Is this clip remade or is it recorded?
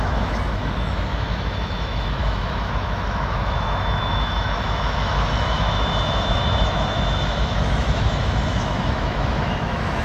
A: remade